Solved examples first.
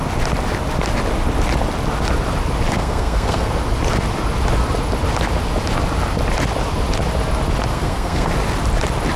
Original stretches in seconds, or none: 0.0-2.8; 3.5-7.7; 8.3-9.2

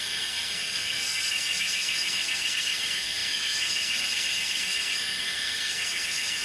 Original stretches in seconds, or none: none

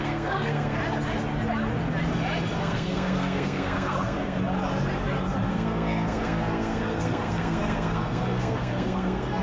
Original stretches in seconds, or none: 0.8-2.6; 4.4-5.5